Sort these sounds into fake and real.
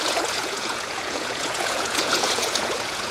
fake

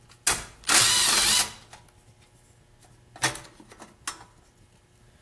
real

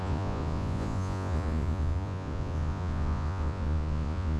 fake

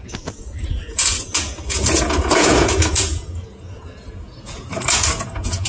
fake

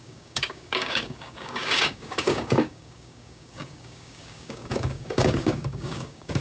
fake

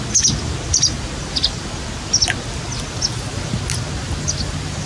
real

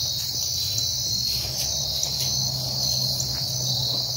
real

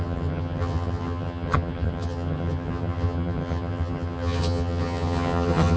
fake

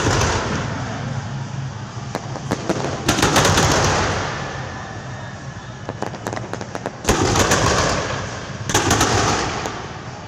real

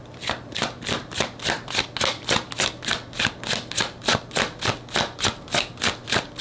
real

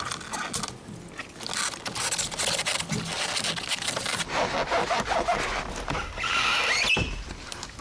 real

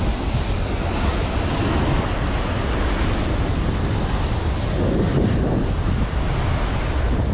real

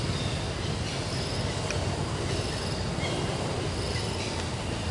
real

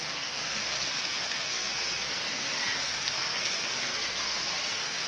fake